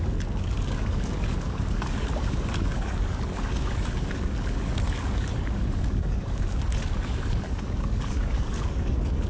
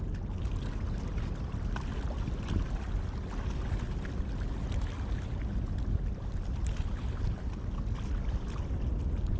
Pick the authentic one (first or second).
second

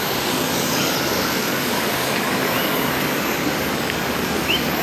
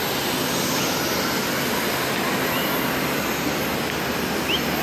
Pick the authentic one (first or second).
second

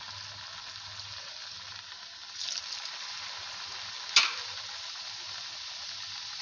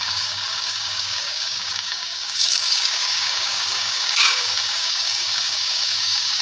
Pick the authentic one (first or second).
first